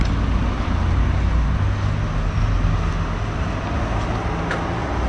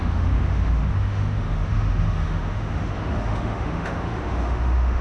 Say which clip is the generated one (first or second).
second